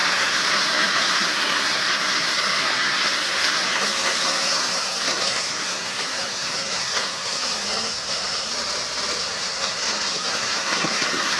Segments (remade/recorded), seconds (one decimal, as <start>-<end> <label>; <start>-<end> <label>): 0.0-8.5 remade; 8.5-9.2 recorded; 9.2-11.4 remade